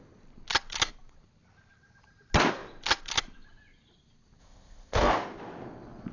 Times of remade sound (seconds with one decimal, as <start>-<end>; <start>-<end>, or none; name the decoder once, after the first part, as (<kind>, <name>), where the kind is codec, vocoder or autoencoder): 4.4-5.1 (codec, ZipCodec)